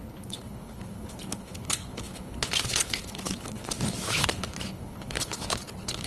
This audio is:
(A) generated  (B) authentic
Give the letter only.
A